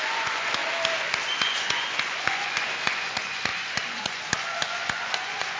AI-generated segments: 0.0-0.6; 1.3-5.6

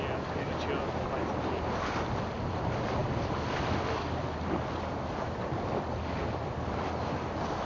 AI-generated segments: none

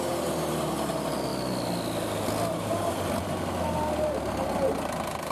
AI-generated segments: none

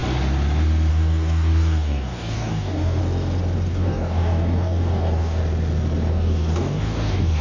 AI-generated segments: 0.9-3.0; 3.7-5.4; 6.1-7.4